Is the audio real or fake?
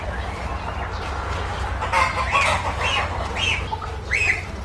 real